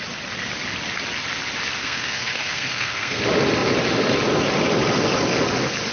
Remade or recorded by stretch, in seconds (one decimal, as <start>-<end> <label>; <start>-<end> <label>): 0.0-1.8 recorded; 1.8-3.2 remade; 3.2-5.9 recorded